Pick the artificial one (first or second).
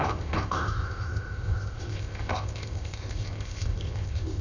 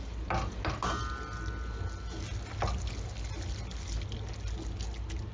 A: first